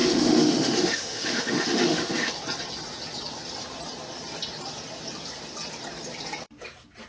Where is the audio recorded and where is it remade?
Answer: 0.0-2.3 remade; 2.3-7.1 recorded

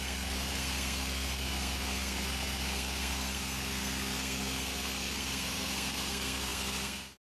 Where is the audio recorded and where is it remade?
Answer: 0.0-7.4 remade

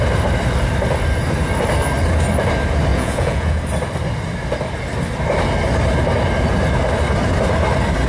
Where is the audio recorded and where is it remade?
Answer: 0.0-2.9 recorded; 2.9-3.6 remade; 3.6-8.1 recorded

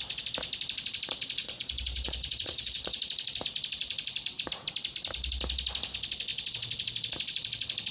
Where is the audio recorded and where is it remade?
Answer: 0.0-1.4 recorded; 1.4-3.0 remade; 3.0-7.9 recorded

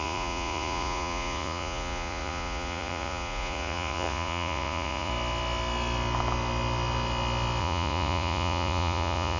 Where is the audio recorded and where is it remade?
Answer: 0.0-5.1 remade; 5.1-7.6 recorded; 7.6-9.4 remade

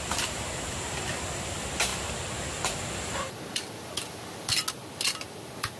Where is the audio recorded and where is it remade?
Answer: 0.0-1.9 remade; 1.9-5.8 recorded

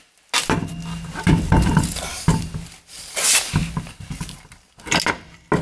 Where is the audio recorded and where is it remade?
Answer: 0.0-5.6 recorded

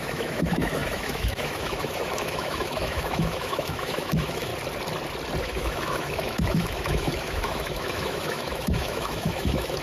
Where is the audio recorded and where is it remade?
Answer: 0.0-4.5 remade; 4.5-5.4 recorded; 5.4-9.8 remade